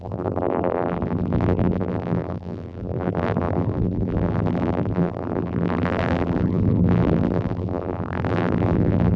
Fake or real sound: fake